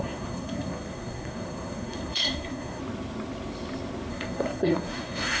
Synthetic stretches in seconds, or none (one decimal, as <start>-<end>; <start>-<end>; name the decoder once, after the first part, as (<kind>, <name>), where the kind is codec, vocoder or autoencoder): 0.0-2.8 (codec, SNAC); 4.1-5.4